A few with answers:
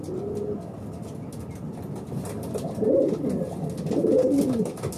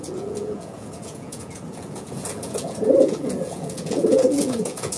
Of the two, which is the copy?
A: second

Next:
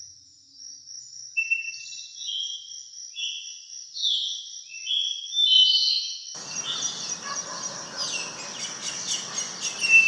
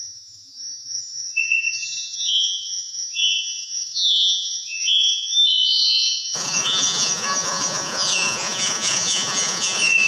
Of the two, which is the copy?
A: second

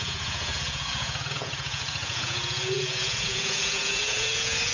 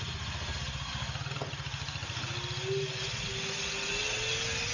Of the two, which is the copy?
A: first